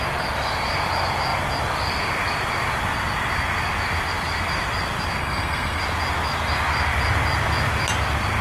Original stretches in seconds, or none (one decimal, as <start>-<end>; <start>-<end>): 0.0-5.2; 5.8-8.4